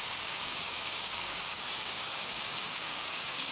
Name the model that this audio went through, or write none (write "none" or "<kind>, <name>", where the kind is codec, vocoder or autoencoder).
codec, DAC